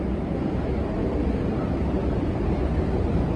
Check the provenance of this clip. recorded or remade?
recorded